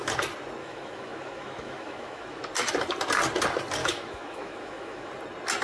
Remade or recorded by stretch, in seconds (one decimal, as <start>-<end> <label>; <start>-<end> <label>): 0.0-0.6 recorded; 0.6-2.5 remade; 2.5-3.8 recorded; 3.8-5.1 remade; 5.1-5.6 recorded